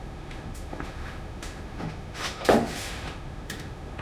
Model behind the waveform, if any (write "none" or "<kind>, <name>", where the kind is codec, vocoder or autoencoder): autoencoder, DAC-VAE